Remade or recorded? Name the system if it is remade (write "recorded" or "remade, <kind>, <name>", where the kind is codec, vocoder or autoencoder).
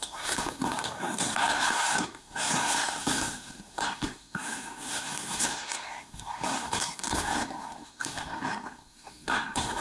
remade, codec, SNAC